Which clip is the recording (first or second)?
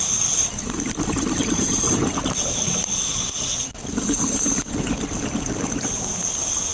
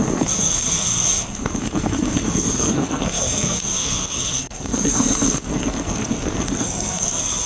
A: first